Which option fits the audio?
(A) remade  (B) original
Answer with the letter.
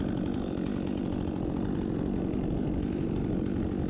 B